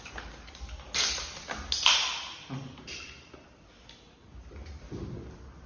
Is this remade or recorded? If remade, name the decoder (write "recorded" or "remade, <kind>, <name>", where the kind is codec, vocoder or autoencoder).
recorded